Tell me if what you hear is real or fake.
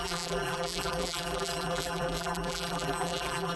fake